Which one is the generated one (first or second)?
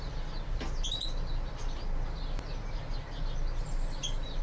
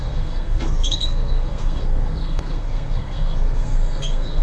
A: second